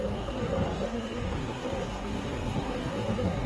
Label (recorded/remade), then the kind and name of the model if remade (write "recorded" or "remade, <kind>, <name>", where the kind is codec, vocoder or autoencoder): remade, codec, SNAC